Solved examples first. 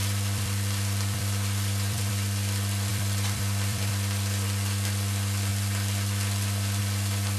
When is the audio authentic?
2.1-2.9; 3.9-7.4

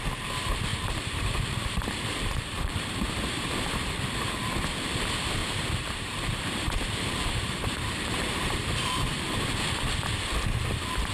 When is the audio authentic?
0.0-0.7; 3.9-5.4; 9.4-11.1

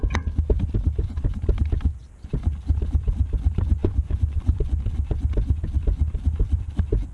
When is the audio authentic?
0.0-3.8; 4.6-7.1

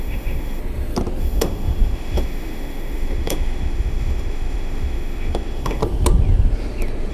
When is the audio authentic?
0.6-1.2; 5.8-7.1

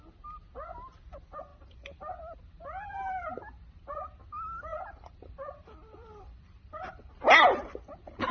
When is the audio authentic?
0.0-1.5; 2.4-4.7; 7.2-8.3

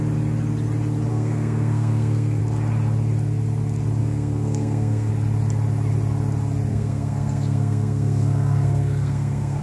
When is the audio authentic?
0.0-1.1; 2.4-4.0; 5.1-6.7

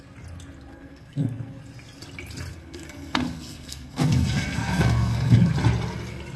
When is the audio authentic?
0.0-0.7; 1.6-2.5; 5.5-6.4